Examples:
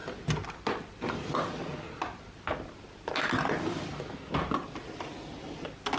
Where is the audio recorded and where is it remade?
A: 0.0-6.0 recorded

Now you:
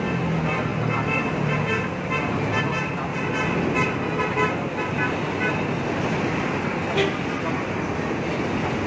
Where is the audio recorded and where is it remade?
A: 0.0-8.9 recorded

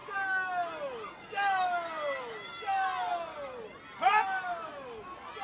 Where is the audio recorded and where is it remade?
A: 0.0-5.4 recorded